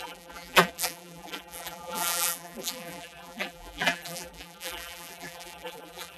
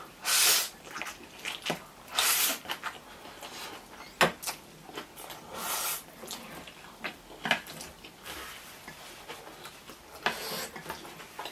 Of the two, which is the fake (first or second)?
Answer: first